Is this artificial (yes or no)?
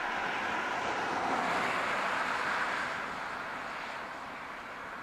no